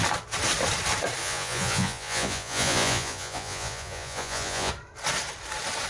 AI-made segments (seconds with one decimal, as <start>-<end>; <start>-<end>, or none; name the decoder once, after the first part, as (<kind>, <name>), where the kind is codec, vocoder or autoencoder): 1.2-4.7 (vocoder, Vocos)